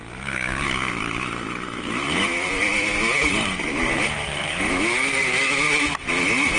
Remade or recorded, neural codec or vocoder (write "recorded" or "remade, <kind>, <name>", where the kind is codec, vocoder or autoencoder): remade, autoencoder, DAC-VAE